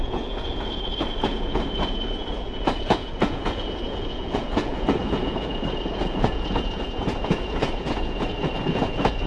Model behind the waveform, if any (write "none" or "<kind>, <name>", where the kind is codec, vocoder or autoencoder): vocoder, Vocos